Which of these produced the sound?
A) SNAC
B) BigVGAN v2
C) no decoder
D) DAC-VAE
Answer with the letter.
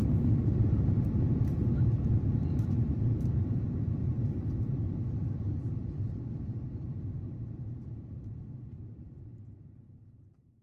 B